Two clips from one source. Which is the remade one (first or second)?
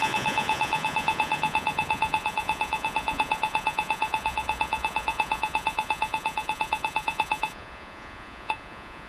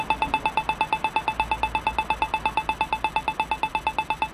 first